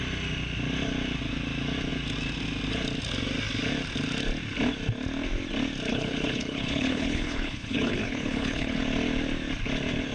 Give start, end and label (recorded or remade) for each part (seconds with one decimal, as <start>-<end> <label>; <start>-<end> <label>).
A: 0.0-5.9 recorded; 5.9-8.8 remade; 8.8-10.1 recorded